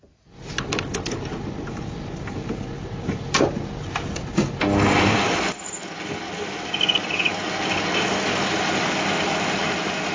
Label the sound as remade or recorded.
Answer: recorded